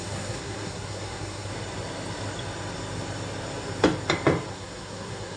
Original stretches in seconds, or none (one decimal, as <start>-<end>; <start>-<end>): 1.5-4.5